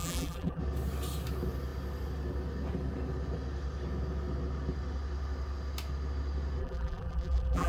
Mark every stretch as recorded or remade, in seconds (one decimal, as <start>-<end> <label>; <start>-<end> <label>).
0.0-0.6 remade; 0.6-6.6 recorded; 6.6-7.7 remade